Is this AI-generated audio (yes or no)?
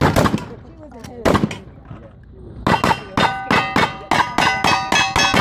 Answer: no